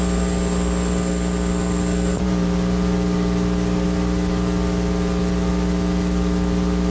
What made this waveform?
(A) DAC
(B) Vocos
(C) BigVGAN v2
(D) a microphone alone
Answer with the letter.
D